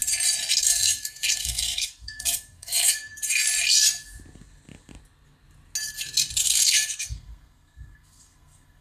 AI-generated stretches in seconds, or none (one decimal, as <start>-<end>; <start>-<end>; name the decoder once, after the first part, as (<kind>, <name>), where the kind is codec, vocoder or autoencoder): 0.6-3.1 (codec, SNAC); 6.4-8.8